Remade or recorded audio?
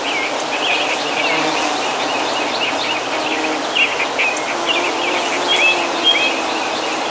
recorded